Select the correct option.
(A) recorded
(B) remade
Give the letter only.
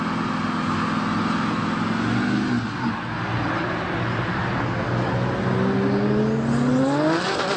A